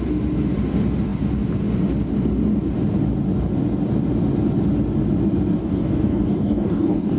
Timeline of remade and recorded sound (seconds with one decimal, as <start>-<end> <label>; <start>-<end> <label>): 0.0-5.6 recorded; 5.6-7.2 remade

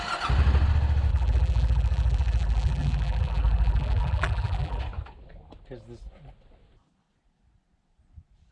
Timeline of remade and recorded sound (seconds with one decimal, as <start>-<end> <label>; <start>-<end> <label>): 0.0-1.1 recorded; 1.1-4.8 remade; 4.8-8.5 recorded

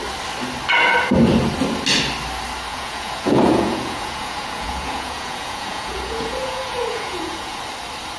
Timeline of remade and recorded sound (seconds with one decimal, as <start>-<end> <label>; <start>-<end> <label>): 0.0-2.7 recorded; 2.7-7.6 remade; 7.6-8.2 recorded

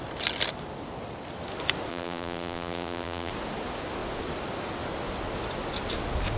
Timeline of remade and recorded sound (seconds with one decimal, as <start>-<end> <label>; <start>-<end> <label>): 0.0-1.9 recorded; 1.9-3.3 remade; 3.3-6.4 recorded

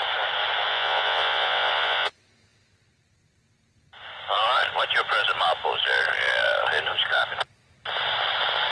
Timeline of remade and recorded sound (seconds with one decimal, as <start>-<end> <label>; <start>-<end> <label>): 0.0-0.7 recorded; 0.7-2.1 remade; 2.1-8.7 recorded

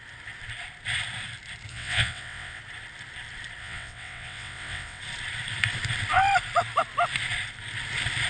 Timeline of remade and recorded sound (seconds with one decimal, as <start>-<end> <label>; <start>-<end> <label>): 0.0-1.7 recorded; 1.7-2.6 remade; 2.6-3.6 recorded; 3.6-5.0 remade; 5.0-8.3 recorded

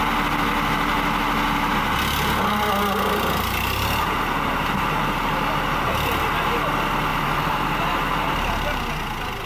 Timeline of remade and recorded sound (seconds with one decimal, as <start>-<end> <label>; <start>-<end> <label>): 0.0-7.1 recorded; 7.1-8.8 remade; 8.8-9.5 recorded